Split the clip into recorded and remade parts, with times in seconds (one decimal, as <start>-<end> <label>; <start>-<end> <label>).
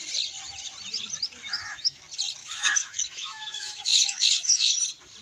0.0-1.5 recorded; 1.5-2.0 remade; 2.0-2.4 recorded; 2.4-4.8 remade; 4.8-5.2 recorded